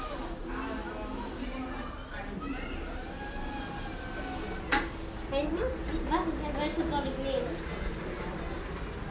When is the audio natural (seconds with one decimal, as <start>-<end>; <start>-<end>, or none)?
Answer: 0.0-5.4; 6.0-9.1